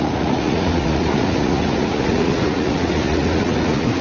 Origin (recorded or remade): remade